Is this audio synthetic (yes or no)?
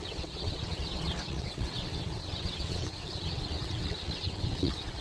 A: yes